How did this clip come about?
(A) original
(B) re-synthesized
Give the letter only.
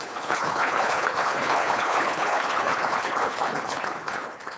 B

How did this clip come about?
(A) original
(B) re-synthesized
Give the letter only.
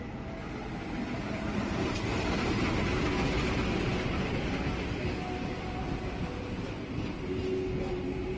A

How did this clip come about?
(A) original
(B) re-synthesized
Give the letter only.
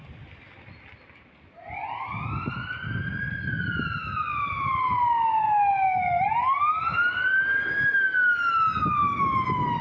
A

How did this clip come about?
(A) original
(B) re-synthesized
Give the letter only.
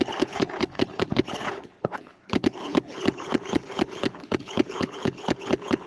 B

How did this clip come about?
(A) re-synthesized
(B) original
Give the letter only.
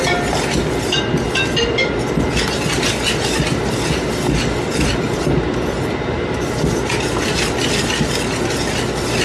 B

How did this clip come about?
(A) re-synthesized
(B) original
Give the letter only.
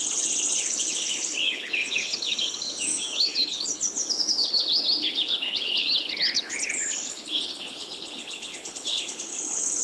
A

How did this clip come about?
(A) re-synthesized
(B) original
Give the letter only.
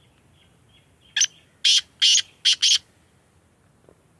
B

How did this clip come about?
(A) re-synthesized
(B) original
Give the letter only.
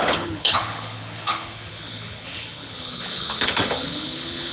A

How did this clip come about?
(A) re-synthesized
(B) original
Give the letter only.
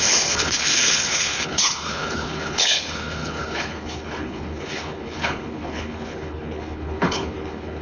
A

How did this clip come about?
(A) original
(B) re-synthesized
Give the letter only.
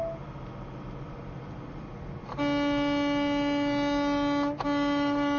A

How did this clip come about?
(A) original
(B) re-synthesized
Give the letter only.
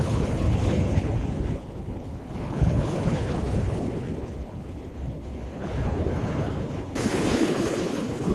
B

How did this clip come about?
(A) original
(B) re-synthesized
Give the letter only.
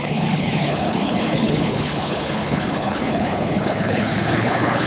B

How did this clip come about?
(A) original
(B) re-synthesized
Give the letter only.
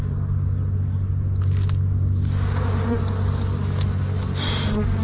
A